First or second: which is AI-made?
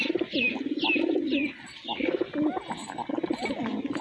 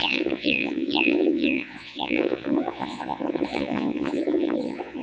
second